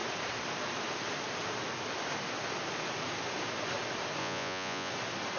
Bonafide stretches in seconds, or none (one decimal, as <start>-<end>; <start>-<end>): 0.0-4.2; 4.9-5.4